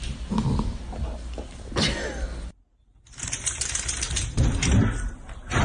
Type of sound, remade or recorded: recorded